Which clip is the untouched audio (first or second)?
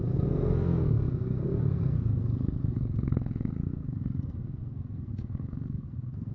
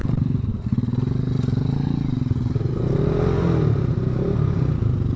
second